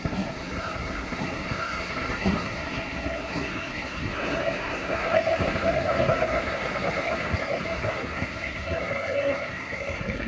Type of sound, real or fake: fake